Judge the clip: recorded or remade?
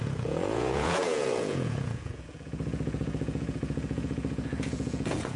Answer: remade